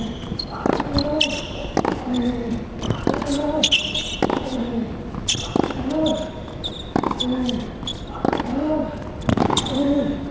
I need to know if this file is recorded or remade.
recorded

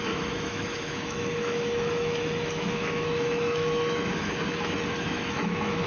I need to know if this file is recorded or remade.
remade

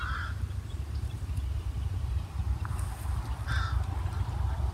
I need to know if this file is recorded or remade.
recorded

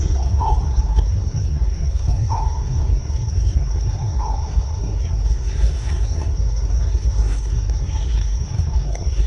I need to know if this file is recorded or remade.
remade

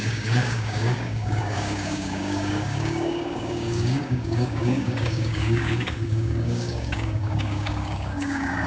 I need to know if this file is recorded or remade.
remade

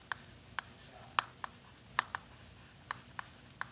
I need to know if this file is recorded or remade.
recorded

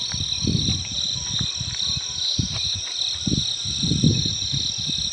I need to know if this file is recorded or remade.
recorded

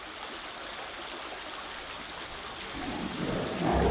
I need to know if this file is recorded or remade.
recorded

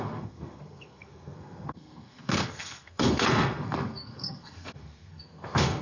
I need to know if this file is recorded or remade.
remade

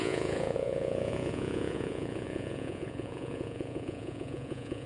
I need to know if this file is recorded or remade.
remade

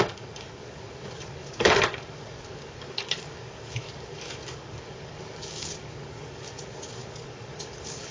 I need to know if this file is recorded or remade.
remade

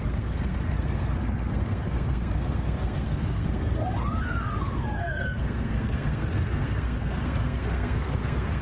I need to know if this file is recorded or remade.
remade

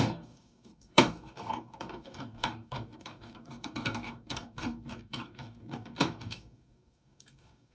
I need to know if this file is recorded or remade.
remade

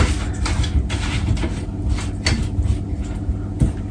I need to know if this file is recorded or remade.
recorded